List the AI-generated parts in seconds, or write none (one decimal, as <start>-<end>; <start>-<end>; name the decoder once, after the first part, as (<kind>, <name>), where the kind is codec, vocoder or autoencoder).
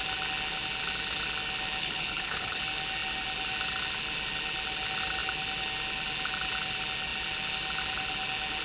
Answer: 1.8-2.6 (codec, HILCodec)